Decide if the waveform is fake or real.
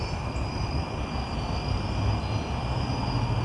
real